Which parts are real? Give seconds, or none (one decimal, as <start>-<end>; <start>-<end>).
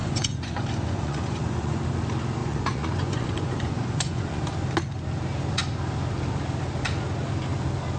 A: 1.8-2.4; 4.4-8.0